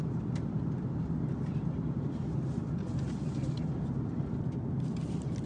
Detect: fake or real real